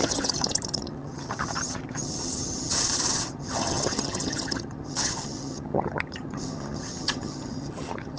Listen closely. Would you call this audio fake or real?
fake